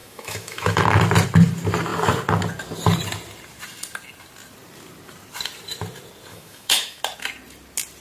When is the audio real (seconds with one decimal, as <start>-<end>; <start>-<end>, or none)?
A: 0.8-6.3; 7.0-8.0